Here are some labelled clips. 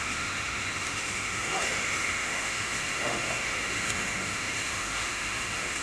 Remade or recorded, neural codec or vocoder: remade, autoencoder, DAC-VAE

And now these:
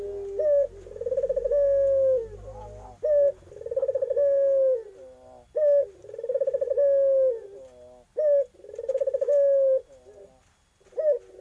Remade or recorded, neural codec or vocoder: recorded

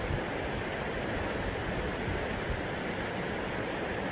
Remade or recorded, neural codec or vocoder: recorded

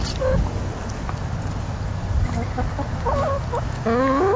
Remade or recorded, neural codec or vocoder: recorded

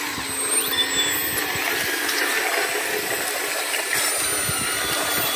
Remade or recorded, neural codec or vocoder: recorded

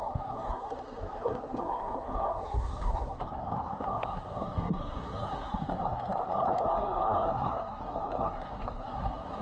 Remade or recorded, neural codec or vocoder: remade, codec, SNAC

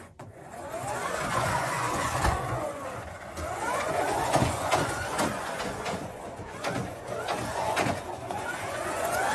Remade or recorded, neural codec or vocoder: remade, vocoder, Vocos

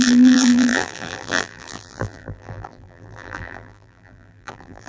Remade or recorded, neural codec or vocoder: remade, vocoder, BigVGAN v2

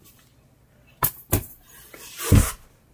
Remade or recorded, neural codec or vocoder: recorded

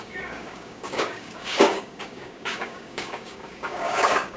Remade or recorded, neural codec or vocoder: remade, codec, DAC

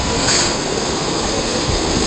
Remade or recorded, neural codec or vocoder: remade, codec, SNAC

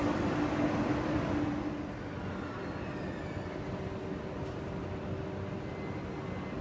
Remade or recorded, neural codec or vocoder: recorded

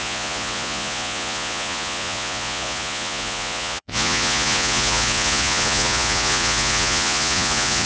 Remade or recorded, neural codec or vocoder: remade, vocoder, Vocos